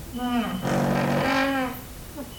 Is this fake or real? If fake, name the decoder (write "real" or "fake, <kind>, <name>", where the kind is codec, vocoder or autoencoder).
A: real